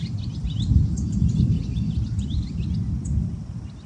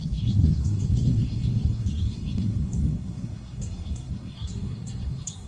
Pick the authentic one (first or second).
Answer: first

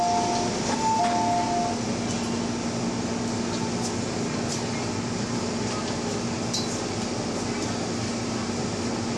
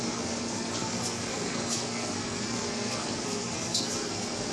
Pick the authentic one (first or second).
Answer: first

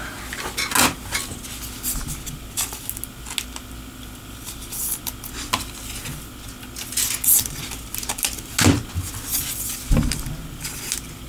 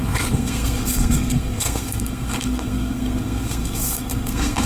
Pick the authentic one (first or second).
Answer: first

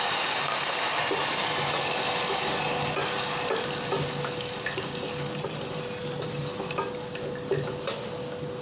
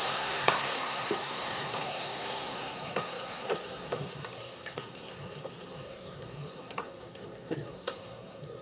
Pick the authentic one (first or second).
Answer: first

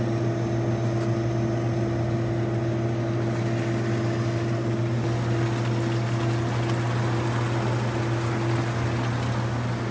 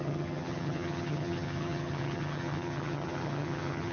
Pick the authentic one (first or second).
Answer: first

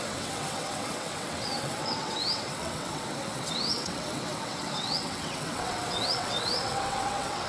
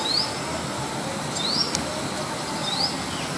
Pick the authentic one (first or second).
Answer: second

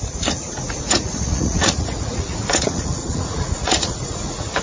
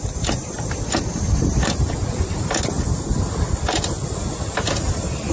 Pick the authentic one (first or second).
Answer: second